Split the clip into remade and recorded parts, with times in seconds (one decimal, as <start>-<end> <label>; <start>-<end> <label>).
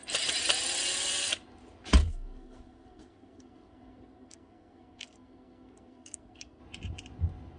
0.0-2.0 recorded; 2.0-6.6 remade; 6.6-7.6 recorded